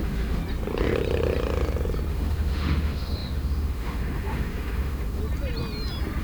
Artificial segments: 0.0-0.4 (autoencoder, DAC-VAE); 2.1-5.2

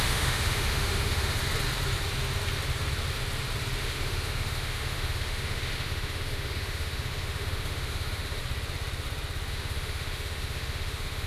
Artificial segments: 0.0-1.4 (autoencoder, DAC-VAE); 3.8-8.4; 9.5-11.3

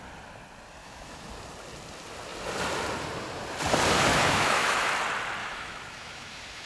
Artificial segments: 0.8-1.3 (autoencoder, DAC-VAE); 4.1-4.9; 5.4-6.7

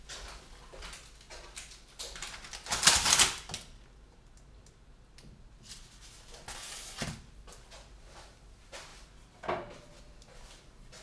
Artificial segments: none

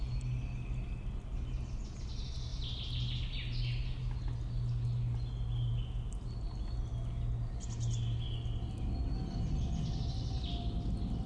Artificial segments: none

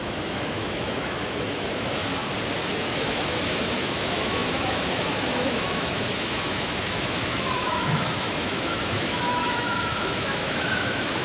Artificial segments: 0.0-2.2 (autoencoder, DAC-VAE); 2.7-11.2